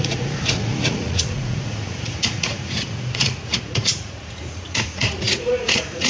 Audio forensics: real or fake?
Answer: fake